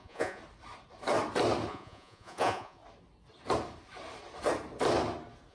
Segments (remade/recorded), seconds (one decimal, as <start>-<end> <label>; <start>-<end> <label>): 0.0-0.4 remade; 0.4-1.7 recorded; 1.7-2.8 remade; 2.8-5.5 recorded